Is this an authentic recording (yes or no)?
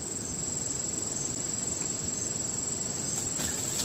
yes